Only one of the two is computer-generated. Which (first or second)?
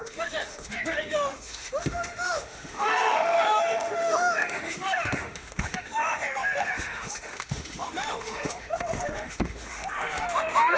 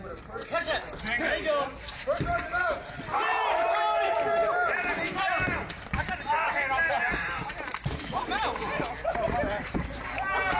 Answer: first